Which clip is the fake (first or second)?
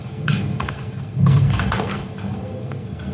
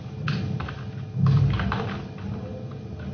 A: first